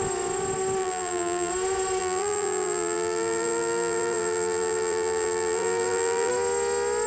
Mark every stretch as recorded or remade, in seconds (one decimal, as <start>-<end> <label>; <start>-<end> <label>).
0.0-0.8 recorded; 0.8-1.5 remade; 1.5-2.0 recorded; 2.0-6.3 remade; 6.3-7.1 recorded